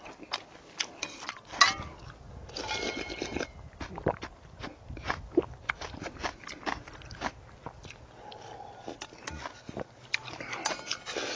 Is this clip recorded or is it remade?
recorded